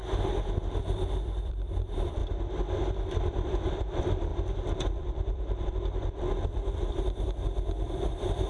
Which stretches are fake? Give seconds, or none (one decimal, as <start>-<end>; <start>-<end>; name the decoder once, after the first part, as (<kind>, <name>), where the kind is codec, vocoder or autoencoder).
0.8-2.2 (vocoder, BigVGAN v2); 3.2-8.5